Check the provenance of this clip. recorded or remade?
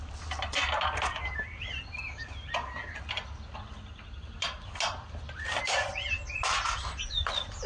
recorded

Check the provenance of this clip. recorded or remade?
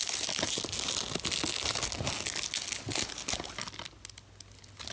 recorded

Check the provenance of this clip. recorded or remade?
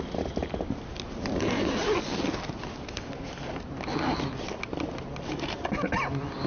recorded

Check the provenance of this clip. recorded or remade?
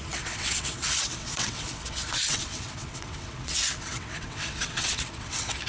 remade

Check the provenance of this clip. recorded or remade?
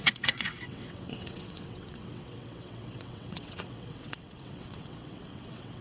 remade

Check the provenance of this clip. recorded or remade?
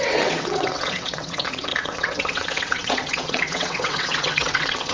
remade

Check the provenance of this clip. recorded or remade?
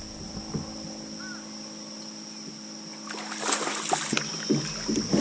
recorded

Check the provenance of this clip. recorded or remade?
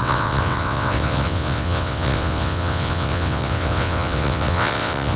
remade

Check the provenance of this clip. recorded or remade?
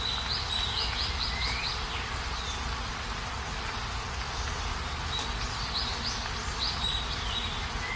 recorded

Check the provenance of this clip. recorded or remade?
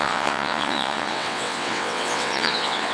remade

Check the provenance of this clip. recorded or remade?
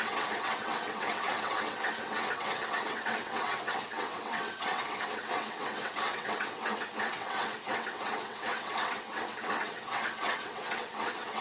remade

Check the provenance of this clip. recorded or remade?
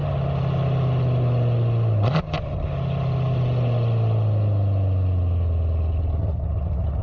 recorded